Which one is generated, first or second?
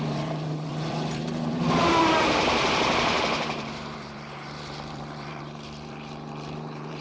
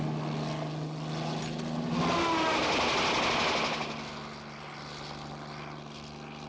first